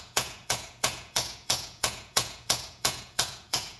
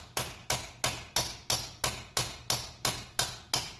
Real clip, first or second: second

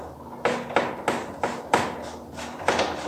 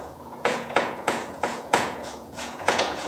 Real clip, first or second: first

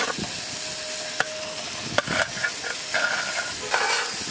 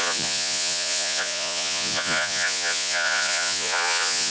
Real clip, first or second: first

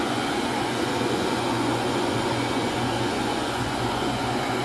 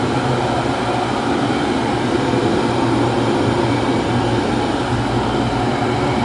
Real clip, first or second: second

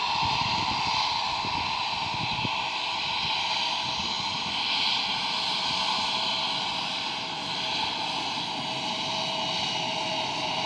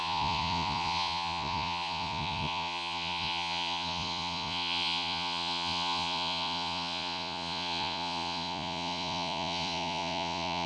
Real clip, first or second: first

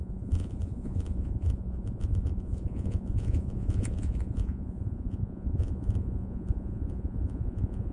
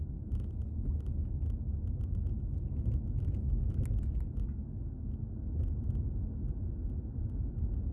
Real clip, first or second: second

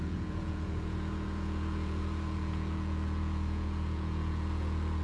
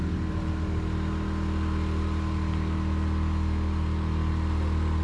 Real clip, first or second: second